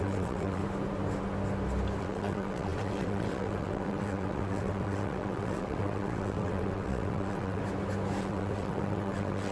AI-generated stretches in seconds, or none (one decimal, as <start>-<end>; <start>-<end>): 0.0-0.6; 2.0-7.6; 8.2-9.5